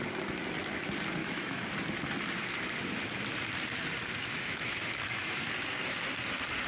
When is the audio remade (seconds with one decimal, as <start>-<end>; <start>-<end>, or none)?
1.2-1.7; 4.3-5.4